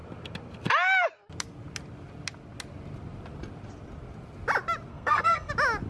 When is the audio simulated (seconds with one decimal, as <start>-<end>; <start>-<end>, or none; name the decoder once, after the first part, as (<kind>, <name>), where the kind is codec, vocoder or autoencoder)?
4.9-5.5 (codec, SNAC)